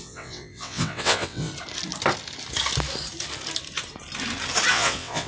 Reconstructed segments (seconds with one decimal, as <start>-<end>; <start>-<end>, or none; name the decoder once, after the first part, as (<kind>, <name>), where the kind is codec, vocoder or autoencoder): 0.0-1.5 (vocoder, WaveNeXt); 4.7-5.3